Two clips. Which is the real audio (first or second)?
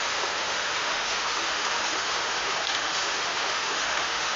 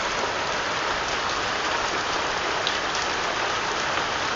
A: second